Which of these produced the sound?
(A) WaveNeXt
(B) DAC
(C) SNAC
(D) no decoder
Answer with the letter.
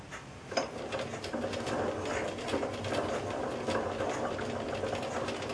D